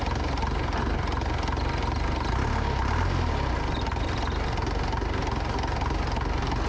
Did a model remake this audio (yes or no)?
no